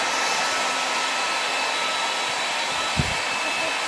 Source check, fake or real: real